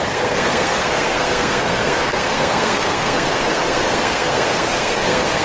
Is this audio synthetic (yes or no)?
yes